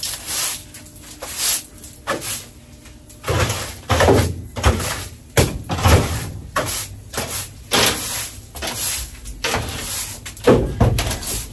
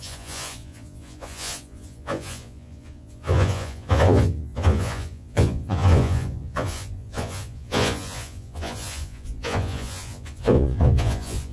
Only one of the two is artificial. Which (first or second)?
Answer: second